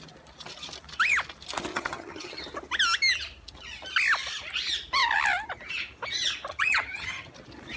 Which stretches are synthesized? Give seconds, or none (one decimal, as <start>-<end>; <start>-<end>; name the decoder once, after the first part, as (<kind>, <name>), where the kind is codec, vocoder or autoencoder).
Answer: 1.7-2.4 (vocoder, HiFi-GAN); 6.5-7.3